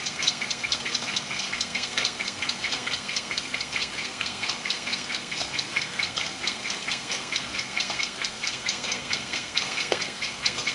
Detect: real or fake fake